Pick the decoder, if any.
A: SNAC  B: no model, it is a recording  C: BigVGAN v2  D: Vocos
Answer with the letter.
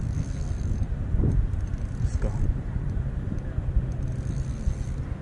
B